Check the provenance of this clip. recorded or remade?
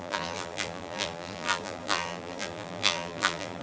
remade